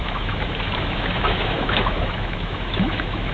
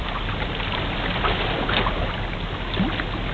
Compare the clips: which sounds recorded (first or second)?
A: second